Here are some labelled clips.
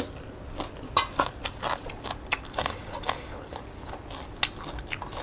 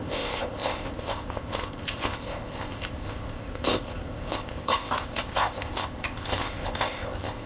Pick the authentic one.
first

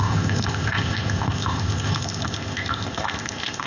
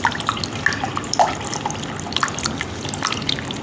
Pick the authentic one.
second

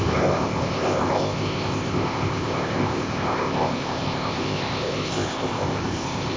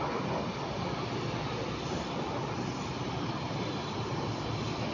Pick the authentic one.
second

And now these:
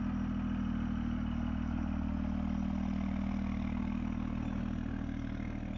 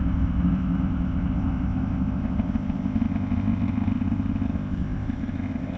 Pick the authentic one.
first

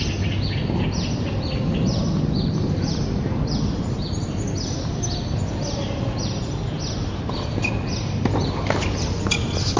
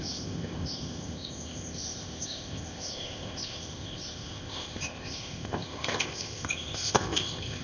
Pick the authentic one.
first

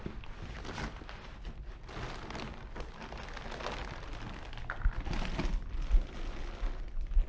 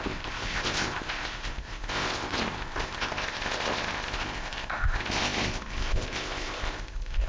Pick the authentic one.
first